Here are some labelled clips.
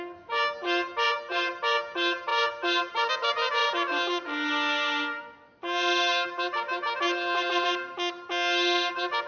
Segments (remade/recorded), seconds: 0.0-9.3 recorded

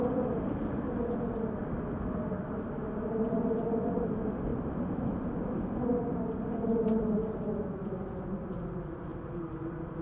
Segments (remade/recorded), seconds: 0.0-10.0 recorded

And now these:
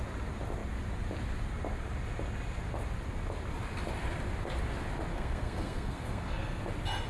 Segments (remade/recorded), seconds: 0.0-5.1 recorded; 5.1-6.6 remade; 6.6-7.1 recorded

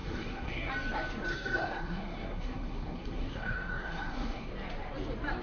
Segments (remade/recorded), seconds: 0.0-0.7 remade; 0.7-1.3 recorded; 1.3-4.5 remade; 4.5-5.4 recorded

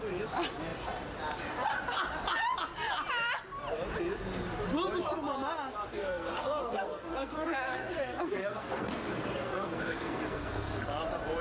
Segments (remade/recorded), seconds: 0.0-5.9 recorded; 5.9-11.0 remade; 11.0-11.4 recorded